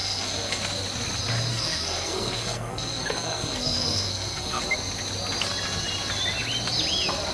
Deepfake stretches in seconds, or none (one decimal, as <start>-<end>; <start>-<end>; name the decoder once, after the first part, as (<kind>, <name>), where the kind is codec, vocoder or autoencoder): 0.0-0.6 (codec, SNAC); 1.5-4.6